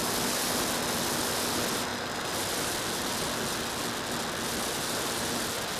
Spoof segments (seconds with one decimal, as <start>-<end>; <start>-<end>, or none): none